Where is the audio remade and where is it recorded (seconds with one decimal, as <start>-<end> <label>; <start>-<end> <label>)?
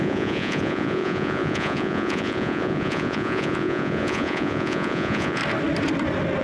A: 0.0-5.4 remade; 5.4-6.4 recorded